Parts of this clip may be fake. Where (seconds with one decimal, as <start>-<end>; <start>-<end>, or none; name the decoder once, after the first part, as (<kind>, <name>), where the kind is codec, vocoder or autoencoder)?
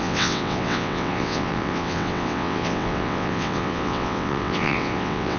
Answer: 0.0-5.4 (vocoder, WaveNeXt)